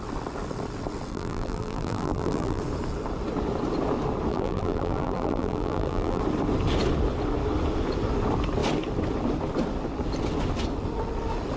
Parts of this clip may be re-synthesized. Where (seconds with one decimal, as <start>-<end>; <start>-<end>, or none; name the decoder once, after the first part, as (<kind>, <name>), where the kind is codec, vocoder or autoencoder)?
1.1-2.6 (vocoder, BigVGAN v2); 4.3-6.2